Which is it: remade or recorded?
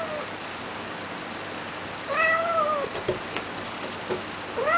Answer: recorded